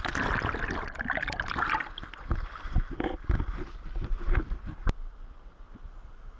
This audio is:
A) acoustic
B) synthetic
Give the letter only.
A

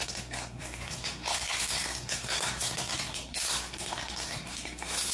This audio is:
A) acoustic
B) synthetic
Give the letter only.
B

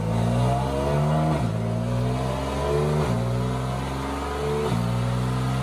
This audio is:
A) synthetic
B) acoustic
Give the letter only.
B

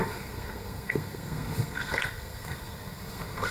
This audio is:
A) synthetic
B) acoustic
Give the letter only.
A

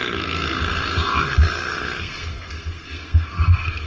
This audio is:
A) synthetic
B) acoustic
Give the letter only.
A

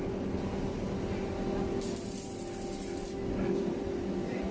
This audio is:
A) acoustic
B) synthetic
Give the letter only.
A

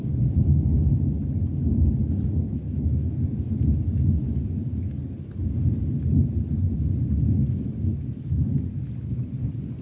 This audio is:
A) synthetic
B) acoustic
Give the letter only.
B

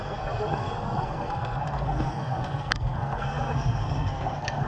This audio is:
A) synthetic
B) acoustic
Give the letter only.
A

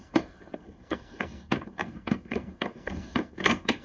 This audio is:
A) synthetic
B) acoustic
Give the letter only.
A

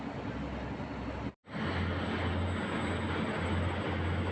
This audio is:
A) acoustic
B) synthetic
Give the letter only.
A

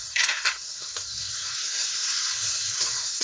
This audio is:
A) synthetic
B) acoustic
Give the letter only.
A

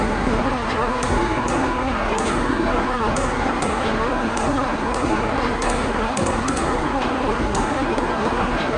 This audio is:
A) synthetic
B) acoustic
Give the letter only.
A